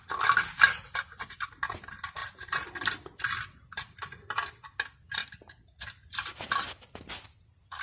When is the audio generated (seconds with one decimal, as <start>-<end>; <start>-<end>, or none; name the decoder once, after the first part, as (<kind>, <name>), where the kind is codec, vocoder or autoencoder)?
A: 2.2-2.7 (vocoder, BigVGAN v2); 5.2-5.8

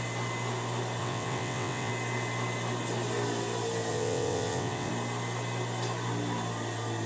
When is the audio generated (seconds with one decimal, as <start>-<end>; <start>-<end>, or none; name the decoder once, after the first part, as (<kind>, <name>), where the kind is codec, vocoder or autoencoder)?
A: 1.0-1.9 (vocoder, WaveNeXt); 3.9-4.9

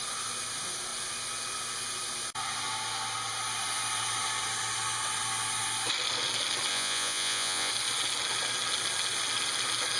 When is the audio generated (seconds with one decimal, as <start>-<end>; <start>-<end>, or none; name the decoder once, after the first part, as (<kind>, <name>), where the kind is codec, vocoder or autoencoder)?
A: 6.7-7.7 (vocoder, Vocos)

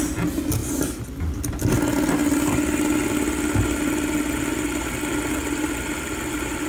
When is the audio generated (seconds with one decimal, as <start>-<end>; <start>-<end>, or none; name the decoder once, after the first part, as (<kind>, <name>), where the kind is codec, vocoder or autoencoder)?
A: none

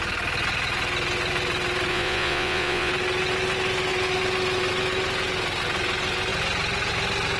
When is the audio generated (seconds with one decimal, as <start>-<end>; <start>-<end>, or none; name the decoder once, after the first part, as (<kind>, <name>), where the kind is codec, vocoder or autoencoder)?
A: 1.9-2.9 (vocoder, Vocos)

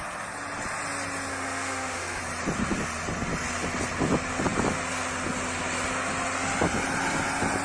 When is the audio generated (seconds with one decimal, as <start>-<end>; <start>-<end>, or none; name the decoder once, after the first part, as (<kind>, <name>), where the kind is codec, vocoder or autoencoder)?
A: 1.3-2.2 (autoencoder, DAC-VAE)

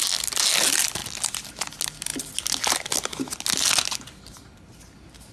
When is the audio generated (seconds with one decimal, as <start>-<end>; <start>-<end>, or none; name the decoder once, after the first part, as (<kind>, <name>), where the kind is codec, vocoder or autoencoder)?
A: none